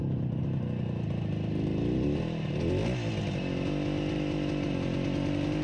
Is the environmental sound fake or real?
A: real